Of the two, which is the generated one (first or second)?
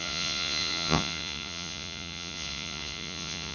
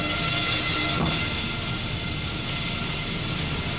first